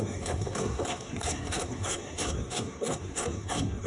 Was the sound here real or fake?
fake